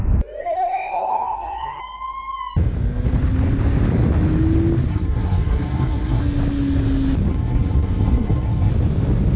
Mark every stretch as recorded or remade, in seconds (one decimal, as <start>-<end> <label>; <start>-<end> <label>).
0.0-0.4 recorded; 0.4-1.8 remade; 1.8-4.9 recorded; 4.9-6.2 remade; 6.2-7.3 recorded; 7.3-8.7 remade; 8.7-9.4 recorded